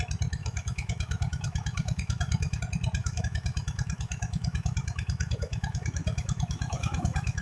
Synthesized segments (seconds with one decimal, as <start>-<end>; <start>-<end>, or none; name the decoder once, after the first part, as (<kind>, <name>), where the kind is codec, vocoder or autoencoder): 0.4-2.6 (autoencoder, DAC-VAE); 3.0-7.4